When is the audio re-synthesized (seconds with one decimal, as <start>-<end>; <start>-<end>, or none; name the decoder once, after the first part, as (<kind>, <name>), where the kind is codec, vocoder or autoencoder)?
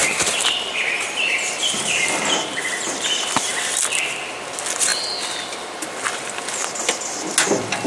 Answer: 0.0-2.6 (vocoder, BigVGAN v2)